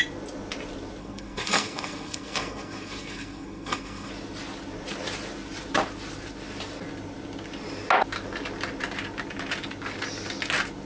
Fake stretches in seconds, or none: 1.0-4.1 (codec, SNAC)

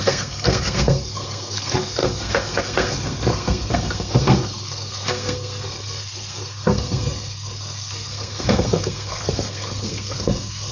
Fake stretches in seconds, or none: 0.0-10.7 (codec, SNAC)

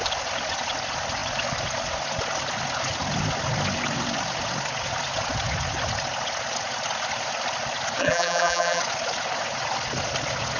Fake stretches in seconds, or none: 8.0-8.8 (vocoder, BigVGAN v2)

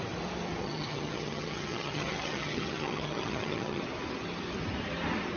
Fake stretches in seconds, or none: 0.6-3.8 (vocoder, HiFi-GAN)

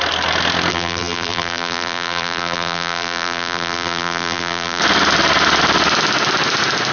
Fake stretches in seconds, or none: 0.7-4.8 (vocoder, BigVGAN v2)